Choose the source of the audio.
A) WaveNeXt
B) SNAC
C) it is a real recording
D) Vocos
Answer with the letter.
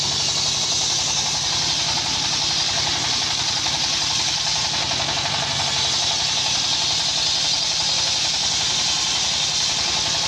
C